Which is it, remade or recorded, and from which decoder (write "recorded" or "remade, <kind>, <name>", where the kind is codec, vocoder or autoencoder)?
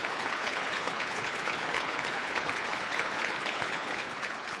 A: remade, codec, HILCodec